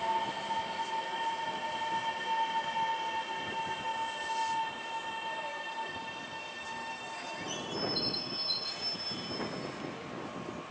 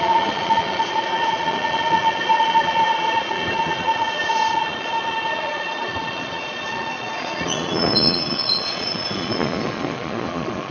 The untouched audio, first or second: first